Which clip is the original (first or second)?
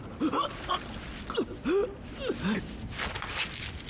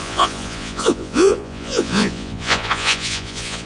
first